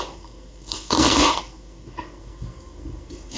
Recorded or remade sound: remade